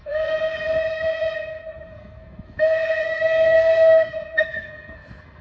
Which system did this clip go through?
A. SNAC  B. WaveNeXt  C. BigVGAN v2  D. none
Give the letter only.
A